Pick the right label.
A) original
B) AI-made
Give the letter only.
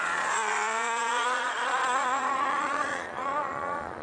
B